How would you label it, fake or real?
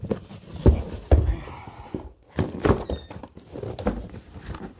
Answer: real